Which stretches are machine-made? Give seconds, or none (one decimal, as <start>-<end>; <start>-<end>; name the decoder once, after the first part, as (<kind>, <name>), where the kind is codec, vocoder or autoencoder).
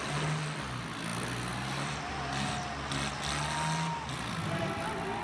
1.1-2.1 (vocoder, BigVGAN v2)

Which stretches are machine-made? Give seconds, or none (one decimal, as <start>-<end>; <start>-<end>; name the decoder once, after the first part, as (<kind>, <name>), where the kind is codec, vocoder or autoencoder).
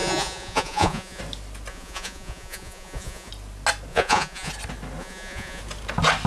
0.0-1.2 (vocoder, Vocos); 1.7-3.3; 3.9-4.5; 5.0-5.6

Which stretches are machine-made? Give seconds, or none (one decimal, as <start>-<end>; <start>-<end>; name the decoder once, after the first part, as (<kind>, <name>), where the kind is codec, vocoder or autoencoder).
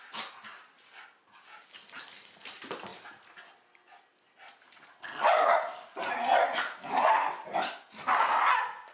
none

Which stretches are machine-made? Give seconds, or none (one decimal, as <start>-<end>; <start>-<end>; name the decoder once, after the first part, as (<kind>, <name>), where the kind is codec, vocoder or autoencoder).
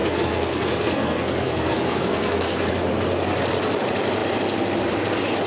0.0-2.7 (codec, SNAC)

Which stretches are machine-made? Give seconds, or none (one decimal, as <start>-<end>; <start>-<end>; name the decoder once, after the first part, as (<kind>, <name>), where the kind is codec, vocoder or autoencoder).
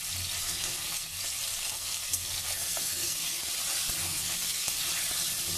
0.4-1.2 (codec, SNAC); 1.6-3.5; 4.0-4.9